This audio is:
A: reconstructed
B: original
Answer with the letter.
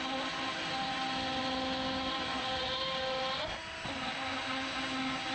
B